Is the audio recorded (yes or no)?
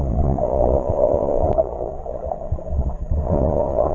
no